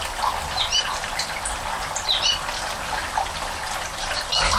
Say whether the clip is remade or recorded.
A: remade